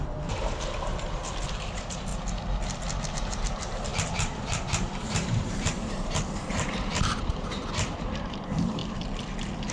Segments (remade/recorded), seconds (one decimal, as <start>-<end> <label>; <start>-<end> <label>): 0.0-0.9 remade; 0.9-1.5 recorded; 1.5-2.1 remade; 2.1-3.1 recorded; 3.1-8.8 remade; 8.8-9.7 recorded